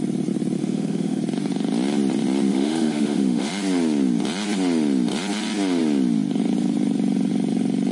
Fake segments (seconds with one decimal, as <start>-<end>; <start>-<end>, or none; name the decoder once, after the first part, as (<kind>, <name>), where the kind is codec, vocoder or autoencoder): 0.6-1.2 (autoencoder, DAC-VAE); 2.5-3.5